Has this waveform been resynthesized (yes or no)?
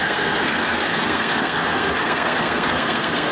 yes